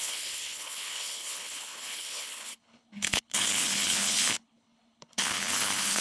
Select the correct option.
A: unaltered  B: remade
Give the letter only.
B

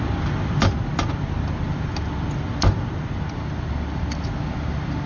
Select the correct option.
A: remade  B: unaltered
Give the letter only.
B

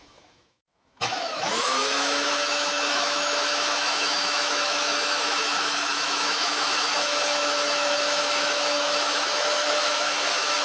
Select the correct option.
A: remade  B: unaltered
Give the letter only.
A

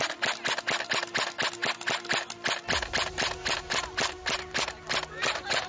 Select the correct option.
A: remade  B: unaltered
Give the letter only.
B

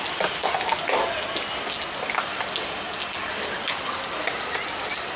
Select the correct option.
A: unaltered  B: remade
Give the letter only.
A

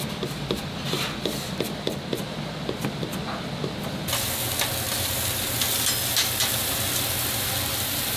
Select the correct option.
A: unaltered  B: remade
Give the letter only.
A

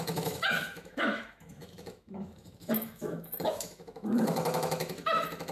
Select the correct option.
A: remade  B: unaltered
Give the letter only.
A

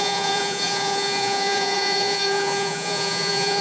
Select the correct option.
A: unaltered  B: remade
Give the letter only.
B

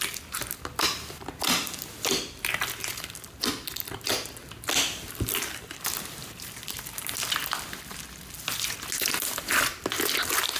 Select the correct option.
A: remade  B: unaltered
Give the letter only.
B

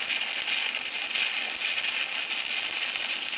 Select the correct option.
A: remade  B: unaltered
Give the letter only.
B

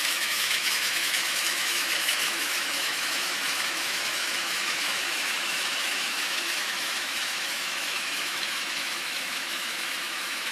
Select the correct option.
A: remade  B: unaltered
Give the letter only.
A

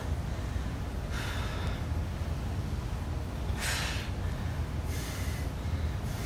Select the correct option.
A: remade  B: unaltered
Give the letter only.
B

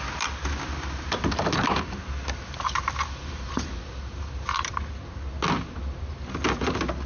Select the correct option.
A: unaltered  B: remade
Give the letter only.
A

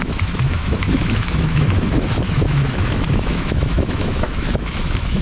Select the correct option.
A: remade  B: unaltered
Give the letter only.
A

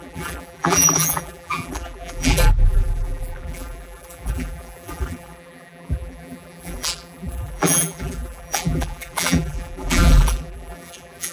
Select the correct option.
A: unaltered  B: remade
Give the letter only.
B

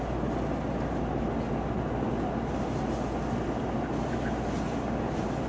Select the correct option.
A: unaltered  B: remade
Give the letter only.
A